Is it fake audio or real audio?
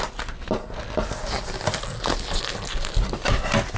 real